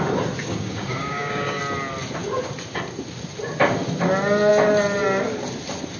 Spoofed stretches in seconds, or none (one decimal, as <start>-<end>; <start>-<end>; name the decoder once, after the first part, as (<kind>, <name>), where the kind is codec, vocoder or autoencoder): 0.4-1.6 (codec, DAC)